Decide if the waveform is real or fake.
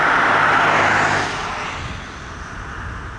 real